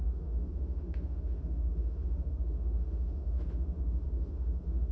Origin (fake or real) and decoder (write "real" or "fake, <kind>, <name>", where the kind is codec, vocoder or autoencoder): fake, autoencoder, DAC-VAE